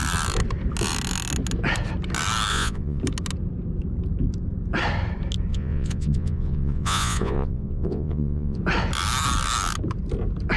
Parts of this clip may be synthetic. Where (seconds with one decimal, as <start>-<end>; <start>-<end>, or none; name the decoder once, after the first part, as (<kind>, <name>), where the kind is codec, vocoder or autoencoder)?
2.5-3.0 (vocoder, Vocos); 5.5-8.6